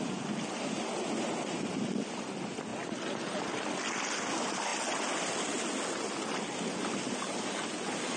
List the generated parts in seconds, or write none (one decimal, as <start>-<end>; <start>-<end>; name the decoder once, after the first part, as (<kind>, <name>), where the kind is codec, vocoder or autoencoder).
none